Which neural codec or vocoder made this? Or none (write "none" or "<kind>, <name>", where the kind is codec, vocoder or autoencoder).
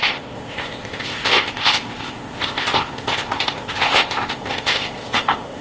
codec, ZipCodec